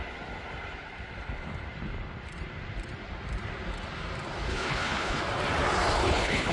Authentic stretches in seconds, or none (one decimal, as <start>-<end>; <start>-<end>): 0.0-4.5; 5.2-6.0